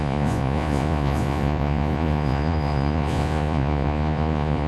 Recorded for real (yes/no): no